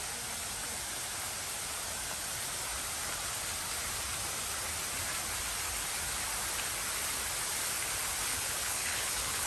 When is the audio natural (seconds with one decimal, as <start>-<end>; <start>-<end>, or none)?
0.0-8.3